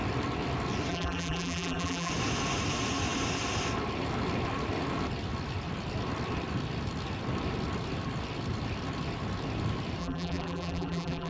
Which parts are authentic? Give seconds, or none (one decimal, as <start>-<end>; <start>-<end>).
0.0-0.9; 2.1-10.0

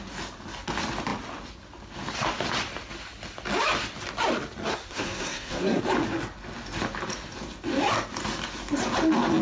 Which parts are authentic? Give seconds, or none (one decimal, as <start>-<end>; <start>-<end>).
0.0-4.7; 5.8-9.4